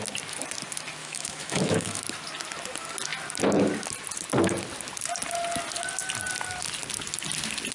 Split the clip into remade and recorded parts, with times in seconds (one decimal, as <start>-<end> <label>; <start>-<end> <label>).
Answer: 0.0-1.0 recorded; 1.0-2.0 remade; 2.0-7.7 recorded